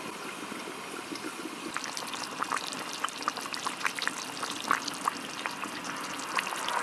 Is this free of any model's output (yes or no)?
yes